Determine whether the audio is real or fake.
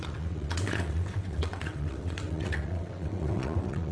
fake